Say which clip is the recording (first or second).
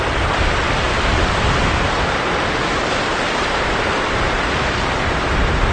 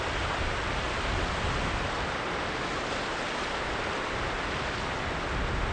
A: second